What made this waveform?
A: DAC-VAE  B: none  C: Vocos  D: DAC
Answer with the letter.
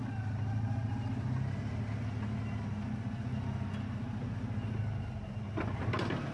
B